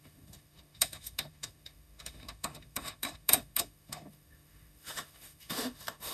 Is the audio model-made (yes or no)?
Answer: yes